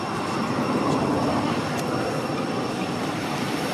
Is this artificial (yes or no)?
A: no